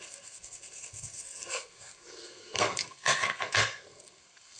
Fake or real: fake